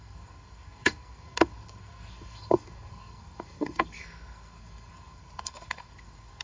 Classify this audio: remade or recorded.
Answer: remade